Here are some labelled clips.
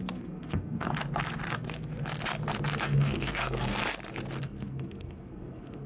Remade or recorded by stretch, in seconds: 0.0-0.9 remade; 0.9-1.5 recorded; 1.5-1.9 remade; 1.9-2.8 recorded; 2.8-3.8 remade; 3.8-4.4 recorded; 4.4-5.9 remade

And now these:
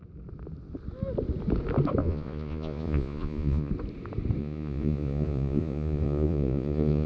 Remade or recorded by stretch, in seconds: 0.0-2.0 recorded; 2.0-3.7 remade; 3.7-4.4 recorded; 4.4-7.1 remade

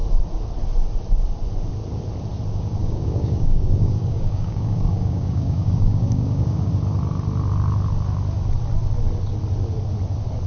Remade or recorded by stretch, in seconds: 0.0-2.8 recorded; 2.8-6.7 remade; 6.7-10.5 recorded

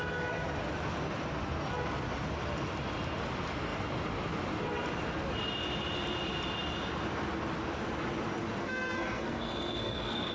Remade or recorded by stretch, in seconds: 0.0-8.6 recorded; 8.6-10.3 remade

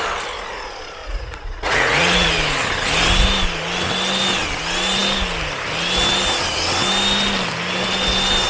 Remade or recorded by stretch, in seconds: 0.0-1.0 recorded; 1.0-2.3 remade; 2.3-8.5 recorded

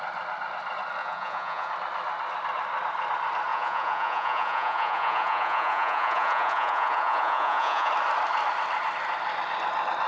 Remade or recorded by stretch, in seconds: 0.0-1.0 recorded; 1.0-1.7 remade; 1.7-3.5 recorded; 3.5-7.9 remade; 7.9-10.1 recorded

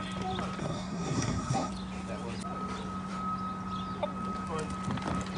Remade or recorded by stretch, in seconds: 0.0-0.6 recorded; 0.6-1.7 remade; 1.7-5.4 recorded

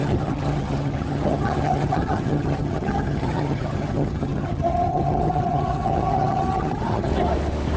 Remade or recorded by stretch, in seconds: 0.0-7.1 remade; 7.1-7.8 recorded